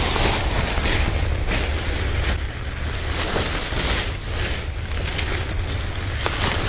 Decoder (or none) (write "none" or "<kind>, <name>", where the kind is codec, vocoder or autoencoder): none